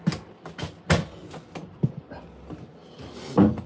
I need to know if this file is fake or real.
real